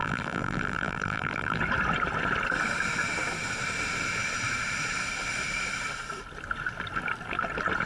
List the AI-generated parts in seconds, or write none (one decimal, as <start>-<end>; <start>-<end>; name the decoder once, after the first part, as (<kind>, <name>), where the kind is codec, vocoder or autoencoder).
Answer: 0.0-1.6 (vocoder, BigVGAN v2)